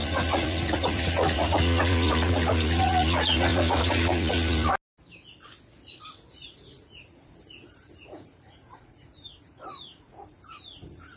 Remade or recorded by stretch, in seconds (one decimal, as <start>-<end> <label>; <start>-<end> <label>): 0.0-4.7 remade; 4.7-6.3 recorded; 6.3-11.2 remade

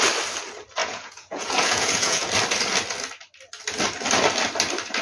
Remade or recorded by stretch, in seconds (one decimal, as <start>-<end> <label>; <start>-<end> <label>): 0.0-0.8 recorded; 0.8-2.3 remade; 2.3-5.0 recorded

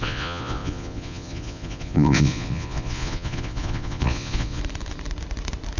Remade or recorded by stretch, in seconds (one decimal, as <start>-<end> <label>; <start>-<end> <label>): 0.0-4.6 remade; 4.6-5.8 recorded

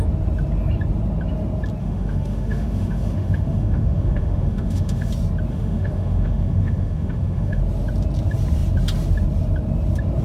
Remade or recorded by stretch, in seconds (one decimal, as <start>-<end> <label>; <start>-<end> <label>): 0.0-1.8 recorded; 1.8-5.1 remade; 5.1-5.5 recorded; 5.5-7.6 remade; 7.6-10.2 recorded

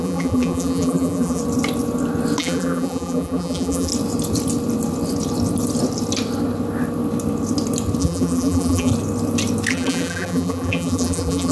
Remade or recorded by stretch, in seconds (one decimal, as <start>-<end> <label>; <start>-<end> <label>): 0.0-1.4 remade; 1.4-2.4 recorded; 2.4-3.9 remade; 3.9-8.0 recorded; 8.0-8.9 remade; 8.9-9.7 recorded; 9.7-11.5 remade